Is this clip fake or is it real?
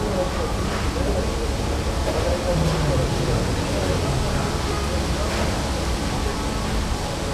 real